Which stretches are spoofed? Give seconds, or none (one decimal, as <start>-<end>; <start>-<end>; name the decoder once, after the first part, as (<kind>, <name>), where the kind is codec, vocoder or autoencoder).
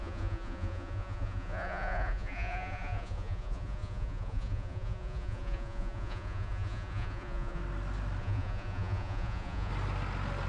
0.0-7.6 (vocoder, Vocos); 8.2-9.7